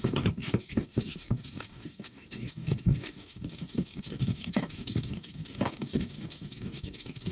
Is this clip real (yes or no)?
no